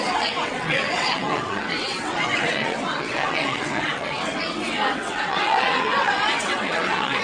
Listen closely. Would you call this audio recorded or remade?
remade